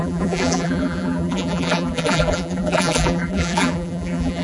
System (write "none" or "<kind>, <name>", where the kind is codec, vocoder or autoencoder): vocoder, BigVGAN v2